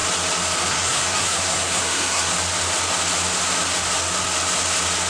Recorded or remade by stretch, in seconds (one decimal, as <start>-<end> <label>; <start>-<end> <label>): 0.0-0.7 recorded; 0.7-2.3 remade; 2.3-5.1 recorded